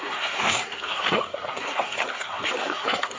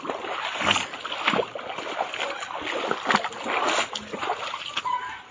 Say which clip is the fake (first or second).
first